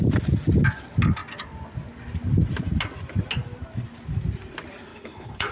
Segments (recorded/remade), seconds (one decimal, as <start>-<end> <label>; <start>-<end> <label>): 0.0-4.9 recorded; 4.9-5.5 remade